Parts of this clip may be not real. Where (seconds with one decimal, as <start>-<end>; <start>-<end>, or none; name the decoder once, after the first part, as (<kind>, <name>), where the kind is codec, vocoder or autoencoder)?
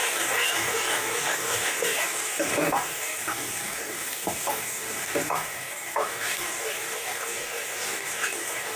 0.0-8.8 (codec, DAC)